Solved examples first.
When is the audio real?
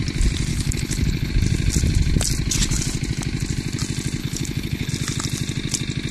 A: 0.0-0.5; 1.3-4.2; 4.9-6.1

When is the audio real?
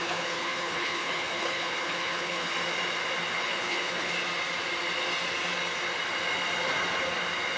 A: 2.5-3.3; 4.1-7.6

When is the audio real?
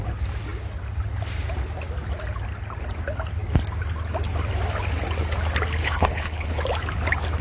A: 0.0-5.8; 6.6-7.4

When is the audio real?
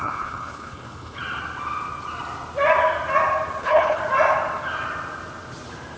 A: 1.2-3.6; 4.0-6.0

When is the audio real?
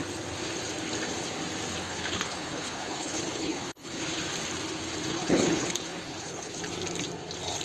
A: 0.0-1.8; 4.2-5.1; 6.6-7.6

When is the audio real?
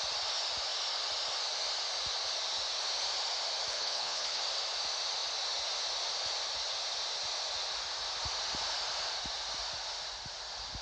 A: 0.0-3.7; 4.4-10.8